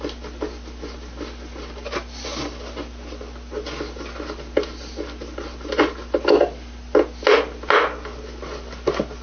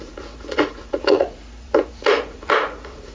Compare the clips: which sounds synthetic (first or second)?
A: second